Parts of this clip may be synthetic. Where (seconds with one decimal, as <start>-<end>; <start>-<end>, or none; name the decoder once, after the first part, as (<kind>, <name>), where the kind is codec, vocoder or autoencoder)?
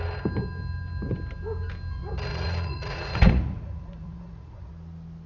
2.3-4.7 (vocoder, Vocos)